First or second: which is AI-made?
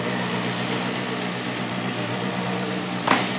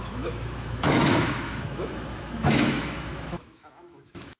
second